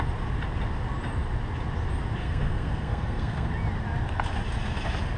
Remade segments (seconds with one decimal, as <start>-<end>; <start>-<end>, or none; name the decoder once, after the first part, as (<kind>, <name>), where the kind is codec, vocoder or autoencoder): 2.2-3.5 (codec, SNAC)

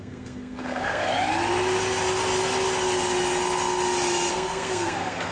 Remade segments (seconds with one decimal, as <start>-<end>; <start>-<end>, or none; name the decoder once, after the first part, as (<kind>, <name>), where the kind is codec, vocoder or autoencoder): 0.0-1.1 (codec, SNAC); 4.3-5.3

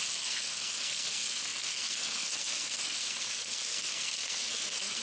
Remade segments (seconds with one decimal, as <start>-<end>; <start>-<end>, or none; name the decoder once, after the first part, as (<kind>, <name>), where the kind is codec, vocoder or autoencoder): 0.0-5.0 (codec, SNAC)

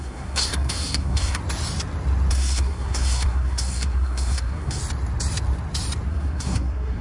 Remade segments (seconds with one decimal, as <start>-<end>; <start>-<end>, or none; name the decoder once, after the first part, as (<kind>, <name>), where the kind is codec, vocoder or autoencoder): 0.0-1.4 (codec, SNAC); 2.3-4.8; 6.1-7.0